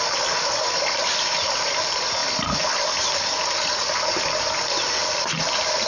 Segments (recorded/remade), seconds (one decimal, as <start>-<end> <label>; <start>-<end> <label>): 0.0-5.9 recorded